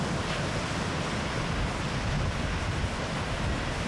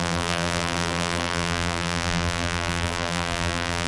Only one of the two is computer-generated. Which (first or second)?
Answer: second